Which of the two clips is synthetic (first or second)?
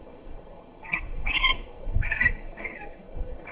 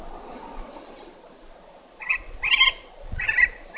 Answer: first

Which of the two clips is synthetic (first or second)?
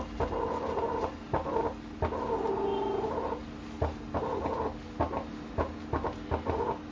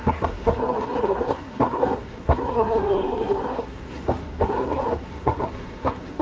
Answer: second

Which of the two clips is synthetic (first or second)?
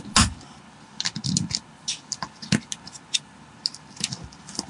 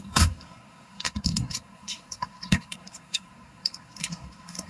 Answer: second